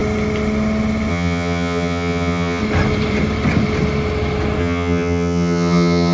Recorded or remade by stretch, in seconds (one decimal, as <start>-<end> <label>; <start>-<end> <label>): 0.0-1.1 recorded; 1.1-2.6 remade; 2.6-4.6 recorded; 4.6-6.1 remade